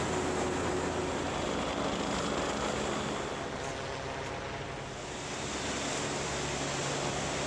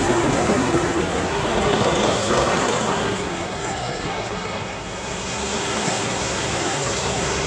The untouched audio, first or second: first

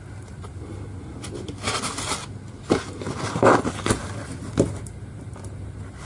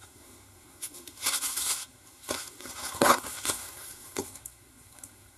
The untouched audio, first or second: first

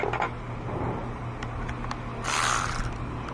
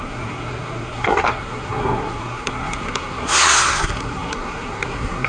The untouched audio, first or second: first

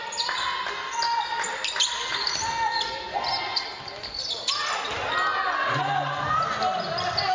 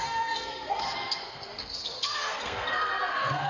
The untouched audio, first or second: first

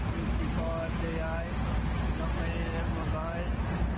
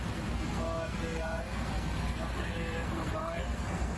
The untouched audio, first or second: first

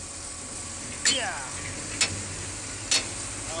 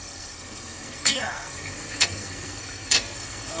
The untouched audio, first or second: first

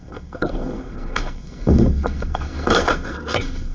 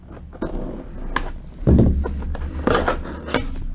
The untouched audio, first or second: second